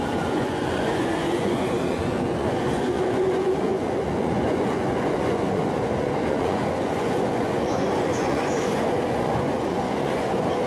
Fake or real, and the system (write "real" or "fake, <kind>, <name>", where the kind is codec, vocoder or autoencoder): fake, vocoder, Vocos